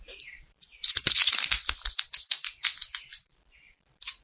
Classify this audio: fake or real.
real